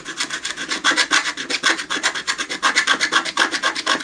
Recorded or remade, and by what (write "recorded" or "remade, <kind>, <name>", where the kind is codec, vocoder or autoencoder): recorded